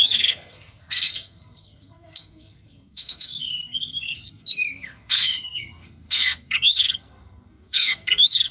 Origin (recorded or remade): remade